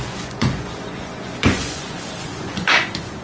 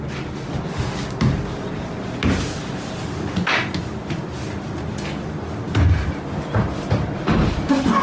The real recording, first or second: second